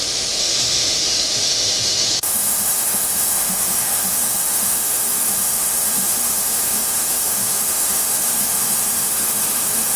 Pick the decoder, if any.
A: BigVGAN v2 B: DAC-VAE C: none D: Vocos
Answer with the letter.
B